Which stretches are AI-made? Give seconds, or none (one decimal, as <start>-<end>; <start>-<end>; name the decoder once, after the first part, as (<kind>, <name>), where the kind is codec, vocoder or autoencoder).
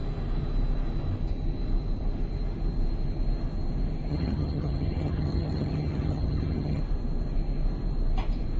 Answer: 4.1-6.8 (vocoder, HiFi-GAN)